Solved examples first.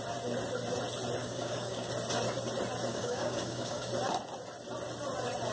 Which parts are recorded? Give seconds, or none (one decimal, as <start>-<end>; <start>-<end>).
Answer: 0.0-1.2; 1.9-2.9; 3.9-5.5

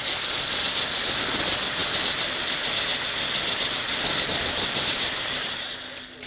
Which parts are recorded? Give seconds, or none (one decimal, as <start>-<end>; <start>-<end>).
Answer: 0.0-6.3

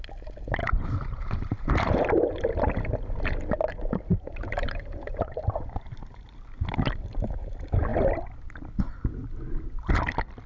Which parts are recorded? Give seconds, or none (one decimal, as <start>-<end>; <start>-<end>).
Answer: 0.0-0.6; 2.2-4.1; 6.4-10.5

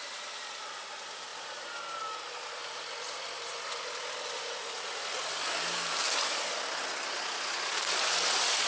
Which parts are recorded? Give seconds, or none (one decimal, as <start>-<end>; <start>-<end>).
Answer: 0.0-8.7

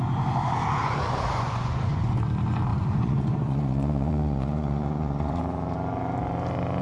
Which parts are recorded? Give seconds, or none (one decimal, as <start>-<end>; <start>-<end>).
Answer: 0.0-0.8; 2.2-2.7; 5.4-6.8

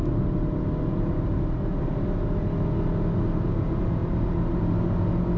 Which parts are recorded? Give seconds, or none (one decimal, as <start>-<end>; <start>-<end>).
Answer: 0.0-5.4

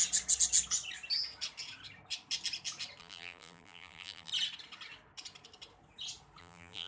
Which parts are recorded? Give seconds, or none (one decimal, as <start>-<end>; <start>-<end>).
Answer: 0.0-3.0; 4.3-6.4